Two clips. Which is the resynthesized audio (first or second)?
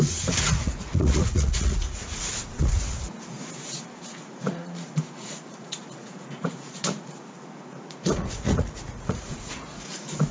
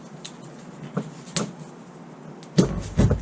first